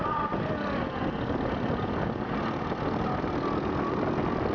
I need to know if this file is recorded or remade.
recorded